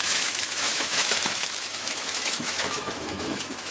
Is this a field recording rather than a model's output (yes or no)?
no